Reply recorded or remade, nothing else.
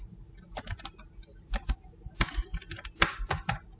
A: recorded